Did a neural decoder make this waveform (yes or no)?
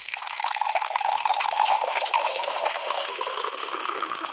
yes